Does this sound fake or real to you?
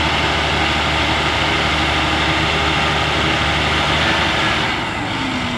real